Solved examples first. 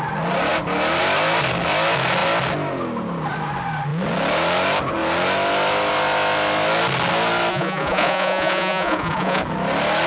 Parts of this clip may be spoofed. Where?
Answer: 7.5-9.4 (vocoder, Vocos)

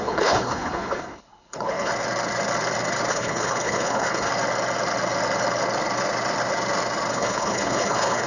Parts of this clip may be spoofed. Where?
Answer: 0.0-1.9 (codec, HILCodec); 3.1-4.3; 7.1-8.3

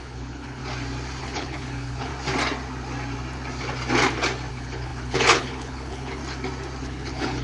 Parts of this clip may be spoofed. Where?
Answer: 0.0-0.6 (codec, HILCodec); 1.2-2.1; 4.5-6.2; 6.8-7.4

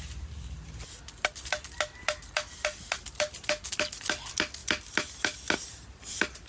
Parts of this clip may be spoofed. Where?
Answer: none

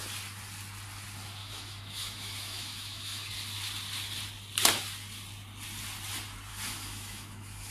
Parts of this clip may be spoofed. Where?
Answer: 1.4-3.3 (autoencoder, DAC-VAE); 6.5-7.7

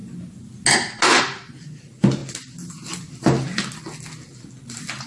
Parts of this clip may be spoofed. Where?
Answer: none

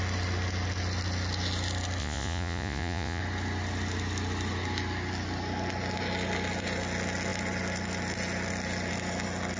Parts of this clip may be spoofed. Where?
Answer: 2.0-3.2 (vocoder, Vocos)

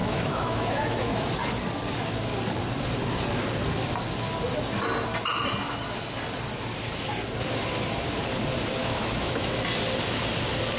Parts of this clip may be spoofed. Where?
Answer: 0.0-1.3 (autoencoder, DAC-VAE); 8.8-9.5